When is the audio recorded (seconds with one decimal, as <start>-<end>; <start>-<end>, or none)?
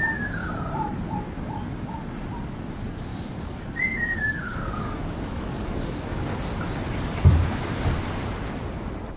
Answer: 0.0-3.1; 6.3-9.2